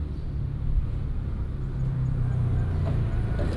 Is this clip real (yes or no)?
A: yes